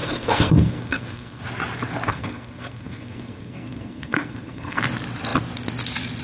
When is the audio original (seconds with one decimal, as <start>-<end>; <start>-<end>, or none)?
1.4-2.1; 4.8-6.2